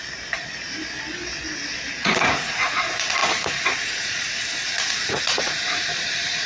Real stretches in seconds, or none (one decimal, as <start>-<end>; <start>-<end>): 0.0-2.0